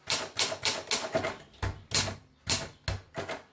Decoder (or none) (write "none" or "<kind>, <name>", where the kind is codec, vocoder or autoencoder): none